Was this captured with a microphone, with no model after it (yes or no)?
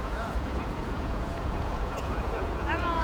no